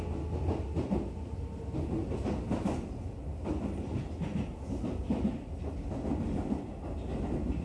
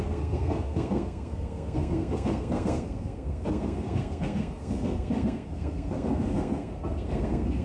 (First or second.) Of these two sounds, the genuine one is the first